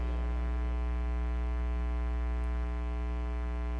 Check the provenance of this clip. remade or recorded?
recorded